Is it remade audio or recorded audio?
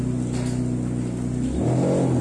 recorded